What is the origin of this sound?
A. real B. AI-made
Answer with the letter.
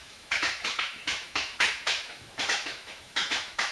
B